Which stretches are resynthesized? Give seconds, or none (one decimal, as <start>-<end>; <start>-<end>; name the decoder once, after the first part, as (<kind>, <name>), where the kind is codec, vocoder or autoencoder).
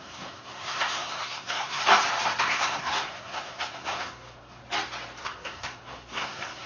0.0-1.8 (codec, SNAC); 2.4-4.6; 5.2-6.7